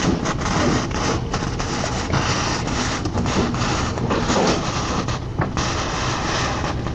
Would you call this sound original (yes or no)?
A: yes